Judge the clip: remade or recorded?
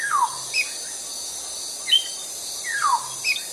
recorded